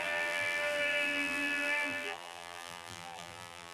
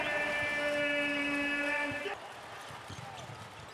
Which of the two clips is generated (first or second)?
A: first